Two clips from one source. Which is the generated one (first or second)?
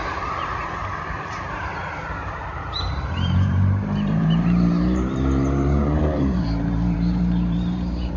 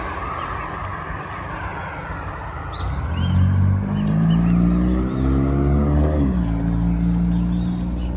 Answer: first